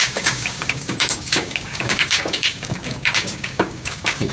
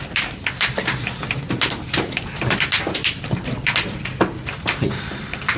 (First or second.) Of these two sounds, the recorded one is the second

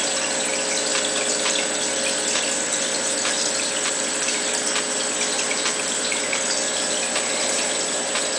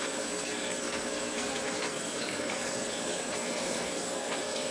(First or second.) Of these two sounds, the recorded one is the first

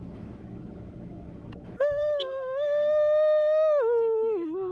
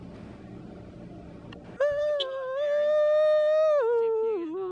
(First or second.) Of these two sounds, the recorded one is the second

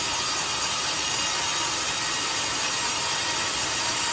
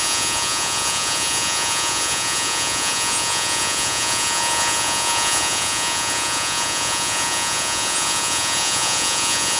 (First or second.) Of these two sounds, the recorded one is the first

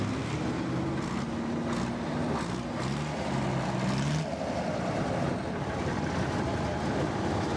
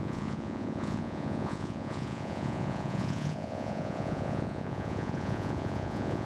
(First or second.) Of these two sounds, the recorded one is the first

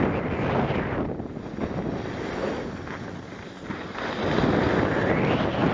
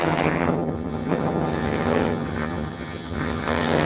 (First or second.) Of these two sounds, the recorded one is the first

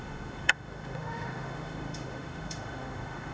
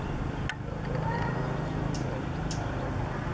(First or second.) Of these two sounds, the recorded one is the second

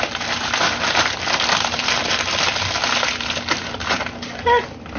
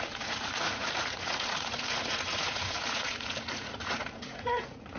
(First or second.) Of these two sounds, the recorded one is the first